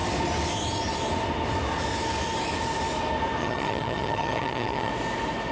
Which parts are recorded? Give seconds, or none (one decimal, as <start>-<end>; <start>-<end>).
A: 0.0-3.4; 4.9-5.5